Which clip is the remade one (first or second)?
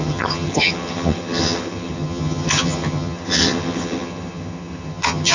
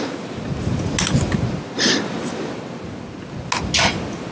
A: first